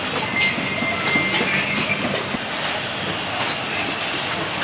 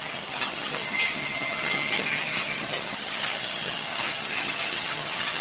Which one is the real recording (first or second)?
first